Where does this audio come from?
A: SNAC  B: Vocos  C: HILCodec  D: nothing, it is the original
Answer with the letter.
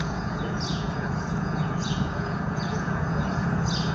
B